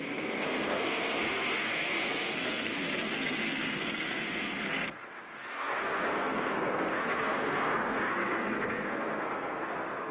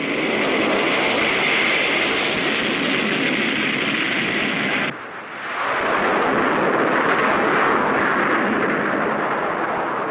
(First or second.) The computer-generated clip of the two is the first